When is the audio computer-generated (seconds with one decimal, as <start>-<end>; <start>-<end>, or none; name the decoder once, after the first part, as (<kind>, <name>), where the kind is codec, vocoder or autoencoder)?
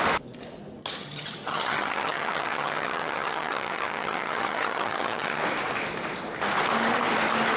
0.8-5.4 (vocoder, HiFi-GAN)